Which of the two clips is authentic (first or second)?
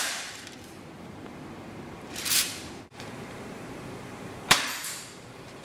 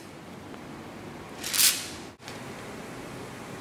second